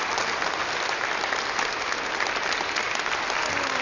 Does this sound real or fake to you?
real